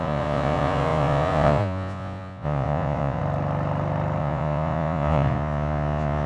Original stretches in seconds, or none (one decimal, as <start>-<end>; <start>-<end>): 3.2-4.2